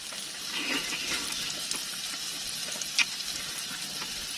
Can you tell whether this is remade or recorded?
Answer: recorded